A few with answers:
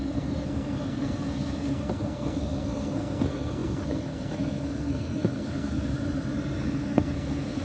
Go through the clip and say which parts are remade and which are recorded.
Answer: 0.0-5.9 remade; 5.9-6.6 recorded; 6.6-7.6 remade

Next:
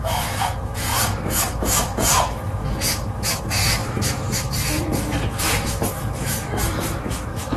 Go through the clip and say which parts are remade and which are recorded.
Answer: 0.0-7.6 remade